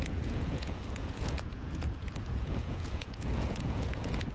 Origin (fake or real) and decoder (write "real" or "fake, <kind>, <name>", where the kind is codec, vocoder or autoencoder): fake, vocoder, Vocos